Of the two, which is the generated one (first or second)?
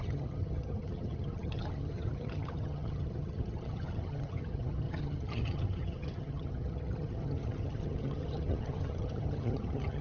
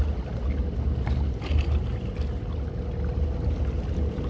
first